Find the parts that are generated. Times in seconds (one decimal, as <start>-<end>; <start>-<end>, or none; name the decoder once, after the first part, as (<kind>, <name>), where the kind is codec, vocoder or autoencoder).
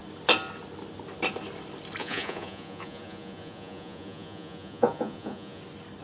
2.0-5.6 (vocoder, Vocos)